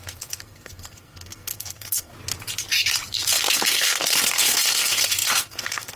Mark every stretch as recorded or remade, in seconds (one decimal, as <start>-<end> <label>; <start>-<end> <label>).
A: 0.0-2.1 remade; 2.1-3.1 recorded; 3.1-6.0 remade